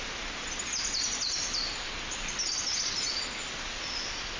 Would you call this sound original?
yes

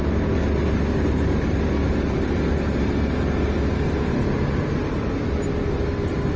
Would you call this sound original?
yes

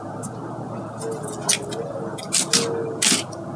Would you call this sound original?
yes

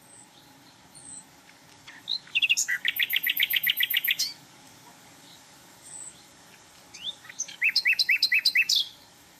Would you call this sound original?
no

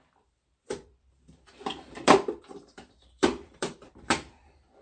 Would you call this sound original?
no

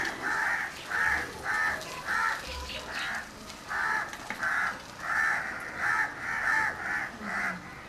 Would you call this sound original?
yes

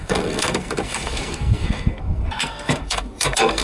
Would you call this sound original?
no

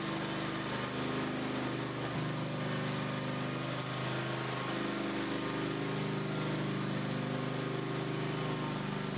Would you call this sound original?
yes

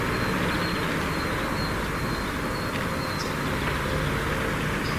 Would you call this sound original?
yes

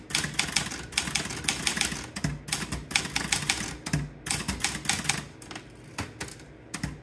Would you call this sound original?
yes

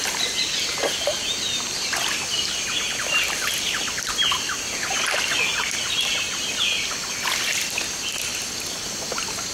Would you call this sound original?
yes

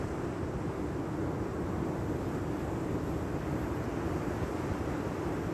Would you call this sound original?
yes